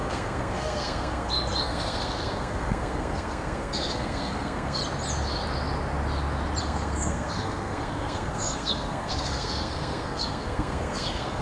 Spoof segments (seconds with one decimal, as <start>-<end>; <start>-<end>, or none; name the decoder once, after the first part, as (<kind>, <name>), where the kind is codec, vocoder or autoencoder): 0.0-4.8 (codec, SNAC); 6.6-11.4